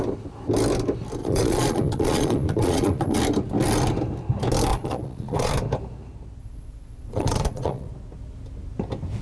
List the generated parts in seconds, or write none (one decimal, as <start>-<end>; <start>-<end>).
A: 1.2-3.2; 4.7-5.5; 6.4-7.9